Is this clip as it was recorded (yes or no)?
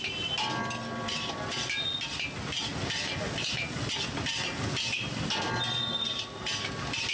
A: yes